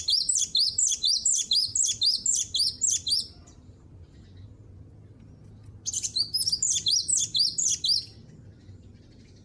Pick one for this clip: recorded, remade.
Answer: recorded